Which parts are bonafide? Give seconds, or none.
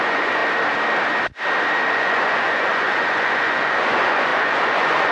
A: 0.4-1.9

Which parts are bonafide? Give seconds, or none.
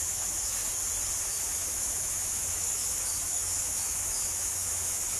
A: 0.6-1.2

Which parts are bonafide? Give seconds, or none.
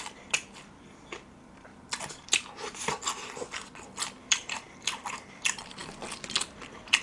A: 1.7-4.3; 5.8-6.4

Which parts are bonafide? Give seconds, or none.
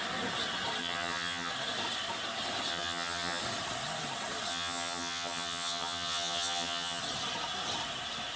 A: 0.0-0.8; 1.5-2.7; 3.4-4.5; 7.0-8.4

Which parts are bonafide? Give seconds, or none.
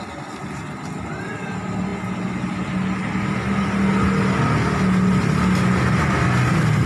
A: 0.0-6.9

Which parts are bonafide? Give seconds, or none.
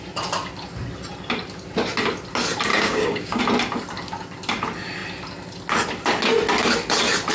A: 0.0-2.7; 3.4-7.3